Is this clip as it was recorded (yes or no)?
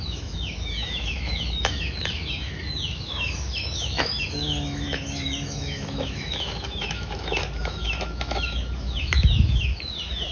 no